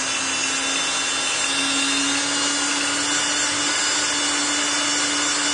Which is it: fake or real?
real